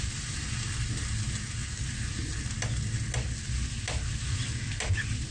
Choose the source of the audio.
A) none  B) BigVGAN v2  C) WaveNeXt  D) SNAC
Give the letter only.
A